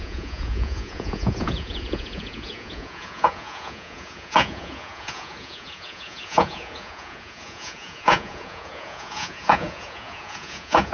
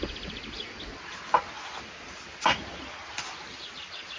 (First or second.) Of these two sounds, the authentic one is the second